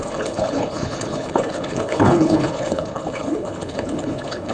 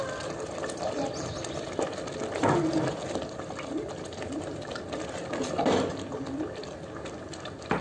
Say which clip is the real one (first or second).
second